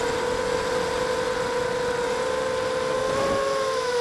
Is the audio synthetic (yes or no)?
no